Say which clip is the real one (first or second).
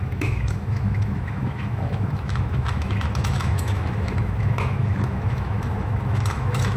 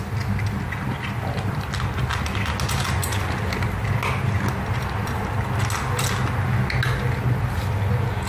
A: second